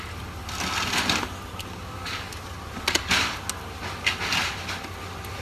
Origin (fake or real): real